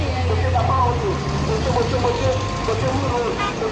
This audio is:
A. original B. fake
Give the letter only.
A